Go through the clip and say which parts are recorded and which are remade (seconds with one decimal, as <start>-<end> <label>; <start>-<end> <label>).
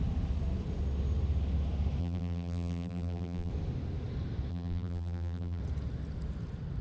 0.0-2.0 recorded; 2.0-3.5 remade; 3.5-4.5 recorded; 4.5-5.6 remade; 5.6-6.8 recorded